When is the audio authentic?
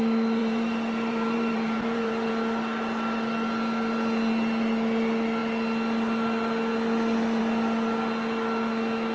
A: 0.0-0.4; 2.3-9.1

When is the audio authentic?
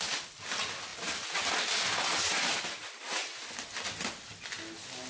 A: 0.0-5.1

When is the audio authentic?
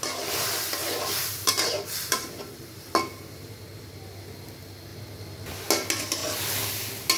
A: 0.0-0.8; 2.9-7.2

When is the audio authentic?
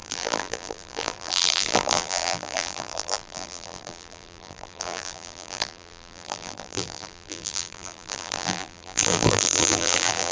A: none